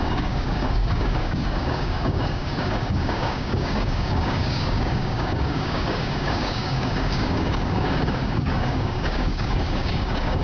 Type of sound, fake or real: fake